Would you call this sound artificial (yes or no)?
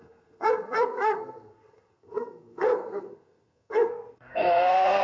yes